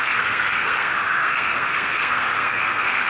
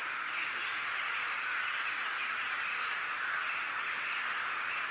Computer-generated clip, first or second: first